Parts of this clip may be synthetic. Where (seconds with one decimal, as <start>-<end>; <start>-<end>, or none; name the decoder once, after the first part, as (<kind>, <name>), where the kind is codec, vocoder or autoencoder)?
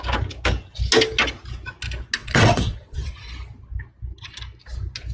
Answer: 2.2-3.3 (vocoder, WaveNeXt)